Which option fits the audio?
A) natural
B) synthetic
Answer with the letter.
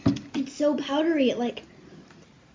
A